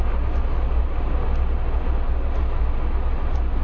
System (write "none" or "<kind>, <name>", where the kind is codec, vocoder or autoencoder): none